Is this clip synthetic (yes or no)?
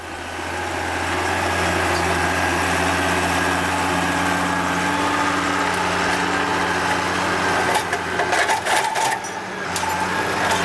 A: no